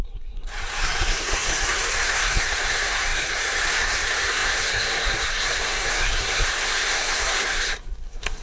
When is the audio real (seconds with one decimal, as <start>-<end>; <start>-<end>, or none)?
none